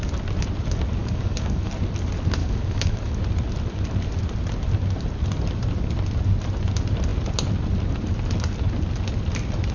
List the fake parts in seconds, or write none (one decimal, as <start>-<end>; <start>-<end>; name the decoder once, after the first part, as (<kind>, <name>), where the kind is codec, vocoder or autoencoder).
1.0-1.7 (codec, DAC); 2.4-3.2